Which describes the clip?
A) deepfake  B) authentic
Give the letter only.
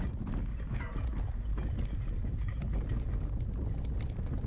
B